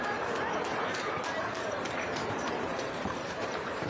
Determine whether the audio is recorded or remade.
remade